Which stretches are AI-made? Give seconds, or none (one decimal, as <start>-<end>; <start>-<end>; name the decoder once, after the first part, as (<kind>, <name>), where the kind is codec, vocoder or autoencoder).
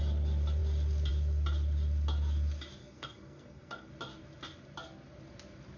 2.8-3.9 (codec, SNAC)